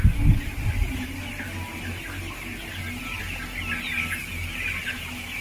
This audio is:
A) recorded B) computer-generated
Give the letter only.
A